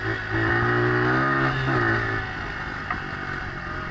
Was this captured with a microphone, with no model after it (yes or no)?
yes